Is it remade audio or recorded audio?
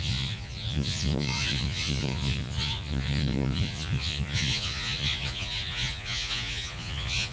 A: remade